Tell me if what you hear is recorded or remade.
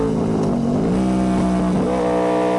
recorded